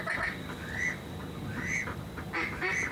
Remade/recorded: recorded